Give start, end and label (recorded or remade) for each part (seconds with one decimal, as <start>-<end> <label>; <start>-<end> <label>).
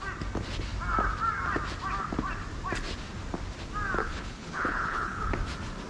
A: 0.0-4.0 recorded; 4.0-5.3 remade; 5.3-5.9 recorded